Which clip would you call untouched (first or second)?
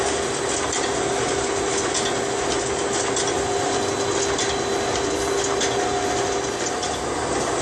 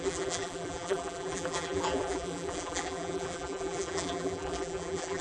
first